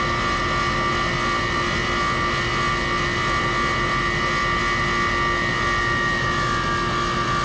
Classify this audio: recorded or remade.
recorded